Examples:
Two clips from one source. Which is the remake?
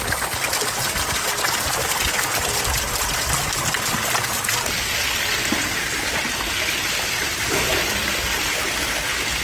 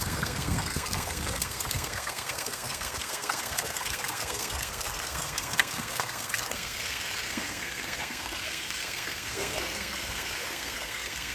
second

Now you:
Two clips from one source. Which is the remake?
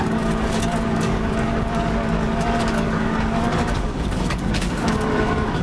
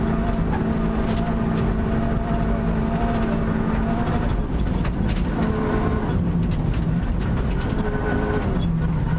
first